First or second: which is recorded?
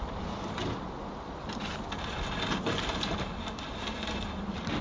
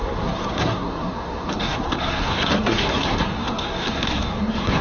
first